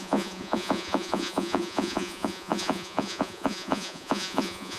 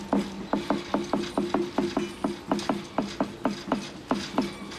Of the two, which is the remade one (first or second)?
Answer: first